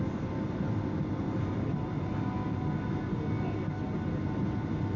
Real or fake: real